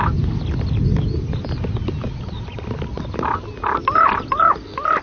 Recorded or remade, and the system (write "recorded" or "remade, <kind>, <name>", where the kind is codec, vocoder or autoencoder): recorded